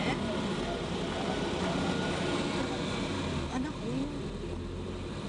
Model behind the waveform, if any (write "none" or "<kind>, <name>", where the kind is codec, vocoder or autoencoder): none